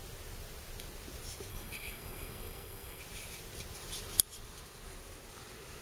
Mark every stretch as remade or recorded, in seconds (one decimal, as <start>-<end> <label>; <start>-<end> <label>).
0.0-1.5 recorded; 1.5-3.0 remade; 3.0-5.8 recorded